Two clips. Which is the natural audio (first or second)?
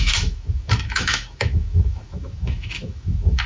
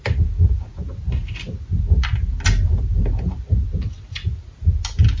second